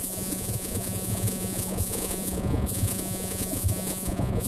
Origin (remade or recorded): remade